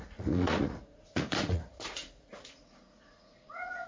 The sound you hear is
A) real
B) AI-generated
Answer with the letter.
B